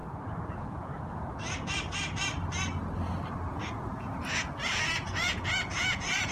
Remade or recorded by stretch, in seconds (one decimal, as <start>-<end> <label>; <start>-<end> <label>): 0.0-0.5 recorded; 0.5-0.9 remade; 0.9-3.6 recorded; 3.6-6.3 remade